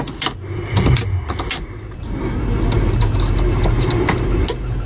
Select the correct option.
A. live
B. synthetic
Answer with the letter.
A